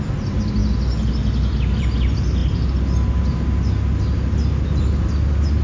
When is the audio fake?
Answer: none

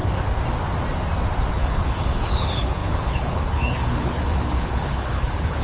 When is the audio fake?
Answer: 1.5-5.6 (codec, HILCodec)

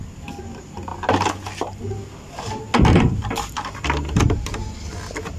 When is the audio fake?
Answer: none

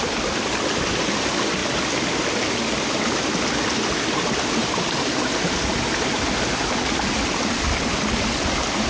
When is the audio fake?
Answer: none

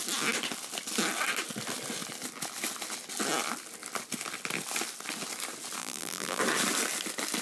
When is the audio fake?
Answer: 5.8-6.4 (vocoder, BigVGAN v2)

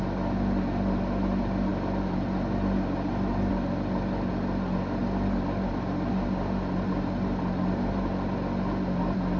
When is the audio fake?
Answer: none